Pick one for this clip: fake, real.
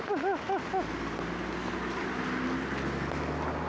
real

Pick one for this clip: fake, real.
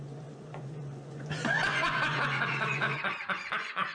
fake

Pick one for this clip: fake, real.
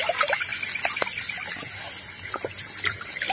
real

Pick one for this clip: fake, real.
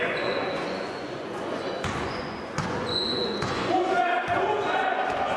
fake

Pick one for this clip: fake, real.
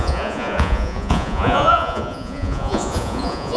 fake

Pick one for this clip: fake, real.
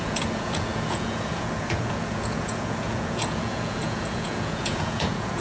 fake